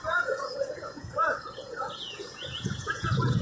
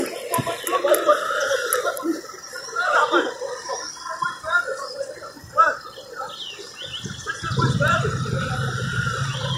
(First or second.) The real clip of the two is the second